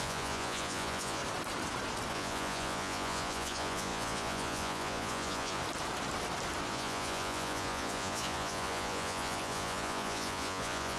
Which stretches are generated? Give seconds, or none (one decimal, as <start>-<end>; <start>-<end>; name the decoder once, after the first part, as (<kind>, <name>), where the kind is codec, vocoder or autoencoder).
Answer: 0.0-1.2 (vocoder, Vocos); 2.1-5.6; 6.7-11.0